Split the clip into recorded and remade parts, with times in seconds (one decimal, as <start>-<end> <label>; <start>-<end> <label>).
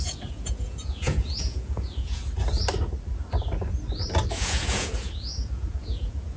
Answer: 0.0-2.2 remade; 2.2-4.3 recorded; 4.3-6.4 remade